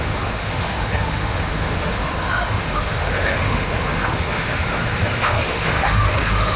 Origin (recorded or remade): remade